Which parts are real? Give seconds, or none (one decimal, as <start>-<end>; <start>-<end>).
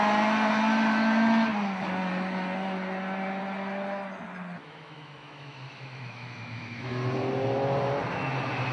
0.0-4.6; 6.9-8.7